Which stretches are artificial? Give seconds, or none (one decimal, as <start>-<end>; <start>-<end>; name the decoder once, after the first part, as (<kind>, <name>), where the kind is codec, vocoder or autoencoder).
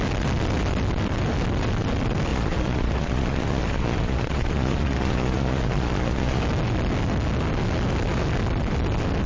2.3-6.4 (vocoder, Vocos)